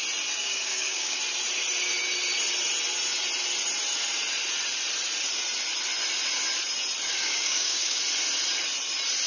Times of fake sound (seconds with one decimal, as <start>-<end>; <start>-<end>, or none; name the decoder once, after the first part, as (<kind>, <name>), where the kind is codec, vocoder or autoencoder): 0.4-1.2 (codec, DAC); 7.1-8.0